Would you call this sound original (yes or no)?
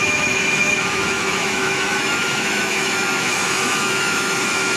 no